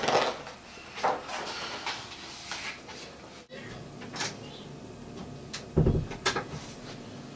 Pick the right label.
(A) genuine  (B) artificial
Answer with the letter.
A